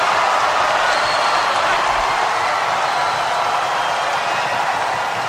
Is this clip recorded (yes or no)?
yes